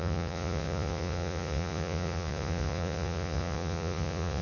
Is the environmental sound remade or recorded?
remade